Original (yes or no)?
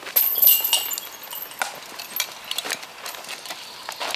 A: yes